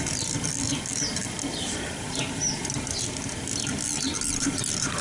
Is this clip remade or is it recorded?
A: recorded